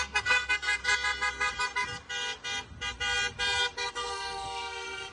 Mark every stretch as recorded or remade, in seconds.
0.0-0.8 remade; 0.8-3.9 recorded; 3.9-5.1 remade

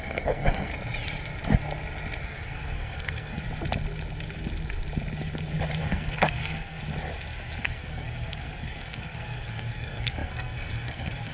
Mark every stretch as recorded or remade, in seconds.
0.0-0.7 remade; 0.7-2.2 recorded; 2.2-3.4 remade; 3.4-5.8 recorded; 5.8-6.8 remade; 6.8-7.6 recorded; 7.6-11.3 remade

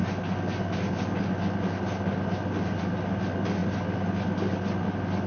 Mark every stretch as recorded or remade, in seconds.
0.0-5.3 recorded

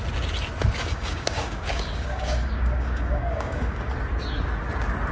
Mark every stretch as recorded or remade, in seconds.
0.0-0.8 recorded; 0.8-3.9 remade; 3.9-5.1 recorded

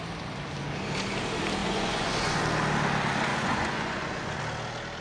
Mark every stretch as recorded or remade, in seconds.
0.0-1.6 recorded; 1.6-2.4 remade; 2.4-3.3 recorded; 3.3-4.4 remade; 4.4-5.0 recorded

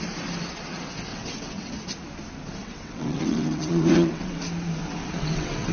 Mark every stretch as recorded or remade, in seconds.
0.0-1.1 recorded; 1.1-1.7 remade; 1.7-2.6 recorded; 2.6-4.4 remade; 4.4-5.0 recorded; 5.0-5.7 remade

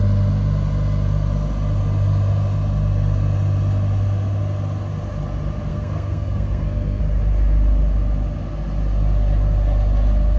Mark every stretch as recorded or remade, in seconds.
0.0-5.7 recorded; 5.7-7.0 remade; 7.0-10.4 recorded